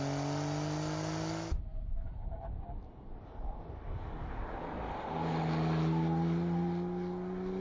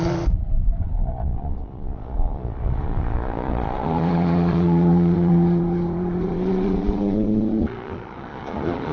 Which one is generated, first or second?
second